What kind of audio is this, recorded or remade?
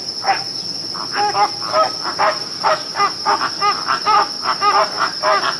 recorded